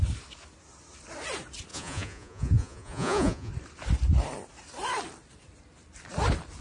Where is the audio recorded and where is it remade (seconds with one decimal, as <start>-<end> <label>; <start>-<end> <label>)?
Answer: 0.0-1.7 recorded; 1.7-3.5 remade; 3.5-6.6 recorded